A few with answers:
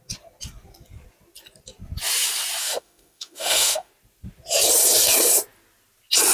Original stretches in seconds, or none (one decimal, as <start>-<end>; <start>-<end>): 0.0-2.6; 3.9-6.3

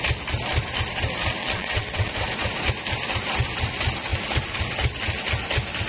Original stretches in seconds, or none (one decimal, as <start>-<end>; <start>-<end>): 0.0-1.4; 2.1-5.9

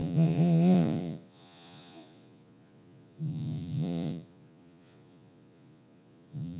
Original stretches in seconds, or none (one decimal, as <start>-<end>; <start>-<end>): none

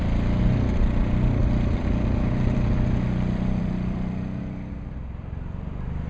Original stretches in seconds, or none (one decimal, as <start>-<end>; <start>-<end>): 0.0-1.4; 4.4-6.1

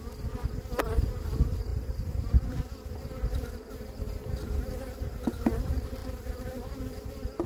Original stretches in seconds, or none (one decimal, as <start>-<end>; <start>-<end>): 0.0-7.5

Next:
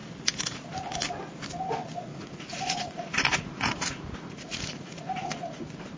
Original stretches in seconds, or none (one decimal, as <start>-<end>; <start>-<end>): 0.0-2.1; 5.6-6.0